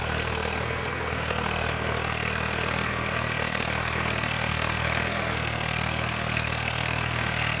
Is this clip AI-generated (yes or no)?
yes